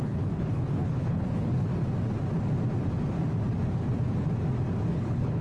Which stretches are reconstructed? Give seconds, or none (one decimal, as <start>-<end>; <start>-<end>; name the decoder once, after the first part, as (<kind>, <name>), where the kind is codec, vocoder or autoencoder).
0.0-1.7 (codec, HILCodec); 4.9-5.4